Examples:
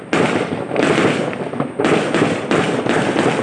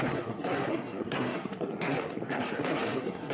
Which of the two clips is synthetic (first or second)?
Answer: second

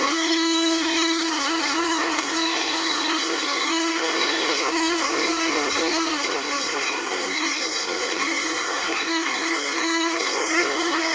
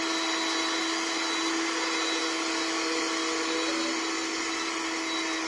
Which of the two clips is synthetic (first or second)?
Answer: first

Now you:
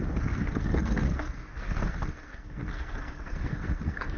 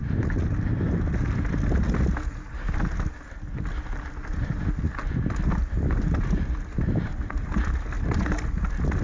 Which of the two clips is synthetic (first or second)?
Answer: first